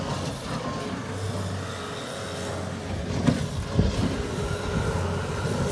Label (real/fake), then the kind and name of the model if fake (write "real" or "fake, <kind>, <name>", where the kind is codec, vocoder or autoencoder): real